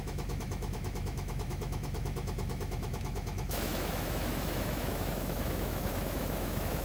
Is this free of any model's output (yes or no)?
no